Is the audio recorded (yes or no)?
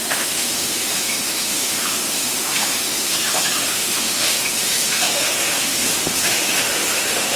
no